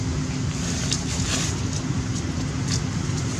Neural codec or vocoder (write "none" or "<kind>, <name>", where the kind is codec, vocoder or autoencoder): none